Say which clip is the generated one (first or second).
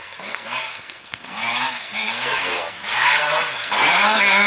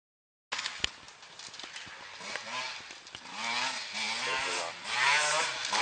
first